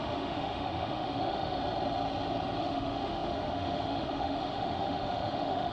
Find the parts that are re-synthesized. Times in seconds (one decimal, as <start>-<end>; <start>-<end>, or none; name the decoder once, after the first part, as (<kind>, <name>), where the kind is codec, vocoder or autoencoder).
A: 0.0-1.6 (autoencoder, DAC-VAE); 2.6-5.7